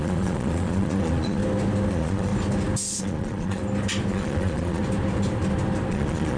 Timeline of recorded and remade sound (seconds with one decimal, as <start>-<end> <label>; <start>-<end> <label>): 0.0-1.4 remade; 1.4-1.9 recorded; 1.9-2.3 remade; 2.3-3.0 recorded; 3.0-3.6 remade; 3.6-4.1 recorded; 4.1-4.8 remade; 4.8-5.9 recorded; 5.9-6.4 remade